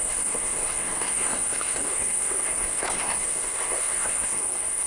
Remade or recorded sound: remade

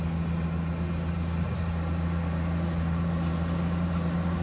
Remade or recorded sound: recorded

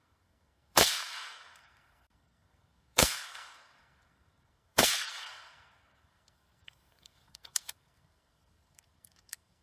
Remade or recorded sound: remade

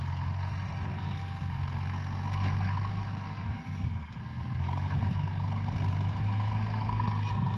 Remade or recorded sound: remade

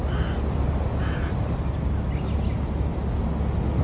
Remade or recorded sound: recorded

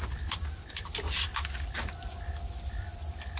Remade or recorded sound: recorded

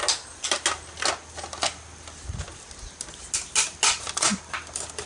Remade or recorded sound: recorded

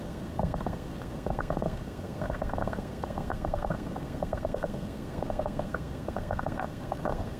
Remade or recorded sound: remade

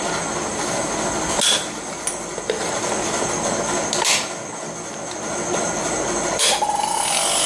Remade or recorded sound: recorded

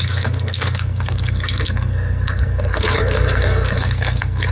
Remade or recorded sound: remade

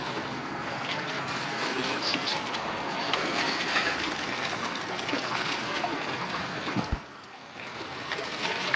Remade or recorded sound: remade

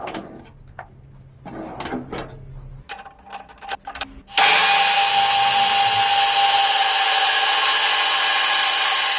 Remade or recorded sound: recorded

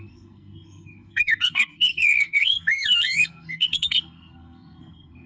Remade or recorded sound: remade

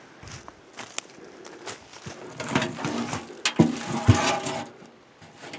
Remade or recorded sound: recorded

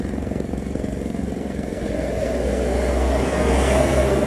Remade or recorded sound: remade